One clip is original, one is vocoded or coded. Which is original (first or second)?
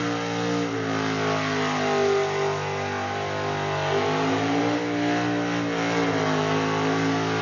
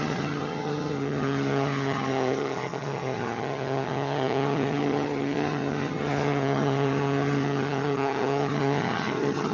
first